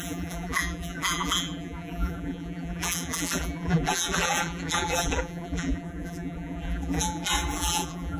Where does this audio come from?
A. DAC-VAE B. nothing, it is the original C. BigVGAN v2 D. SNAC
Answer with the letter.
C